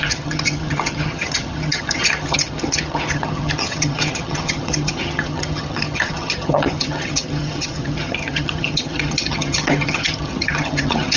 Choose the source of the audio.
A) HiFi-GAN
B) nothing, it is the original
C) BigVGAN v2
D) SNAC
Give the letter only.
A